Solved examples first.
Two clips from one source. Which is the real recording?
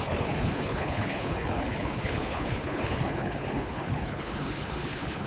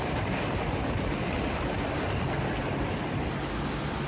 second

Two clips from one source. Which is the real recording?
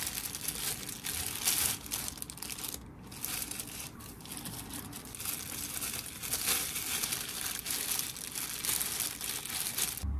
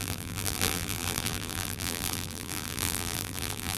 first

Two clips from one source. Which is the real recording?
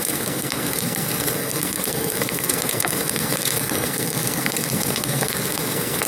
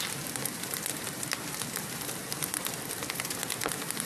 second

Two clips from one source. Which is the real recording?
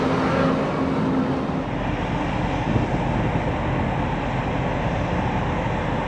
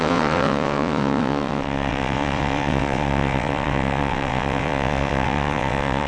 first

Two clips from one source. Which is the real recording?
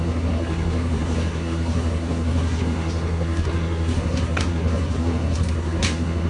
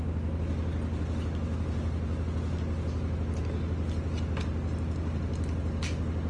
second